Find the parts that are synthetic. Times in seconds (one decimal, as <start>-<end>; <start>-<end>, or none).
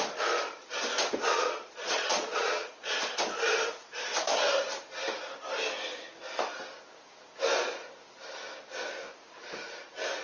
1.3-3.1